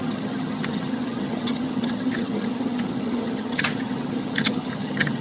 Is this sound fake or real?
fake